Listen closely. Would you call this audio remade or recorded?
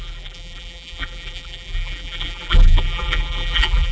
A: remade